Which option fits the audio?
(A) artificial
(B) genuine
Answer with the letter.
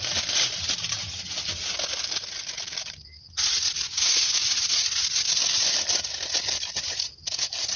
B